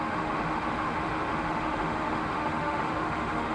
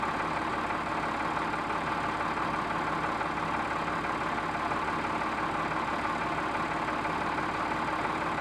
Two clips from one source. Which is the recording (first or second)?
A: second